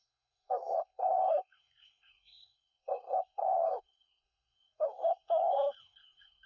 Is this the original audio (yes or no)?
no